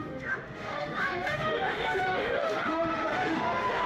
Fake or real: fake